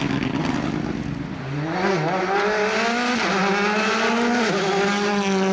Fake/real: real